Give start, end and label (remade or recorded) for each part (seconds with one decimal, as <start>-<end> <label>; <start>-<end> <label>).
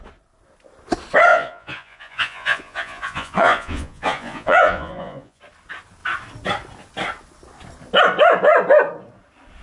0.0-1.3 recorded; 1.3-5.4 remade; 5.4-9.6 recorded